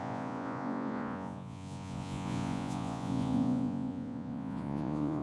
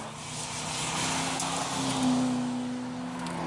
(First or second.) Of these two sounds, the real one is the second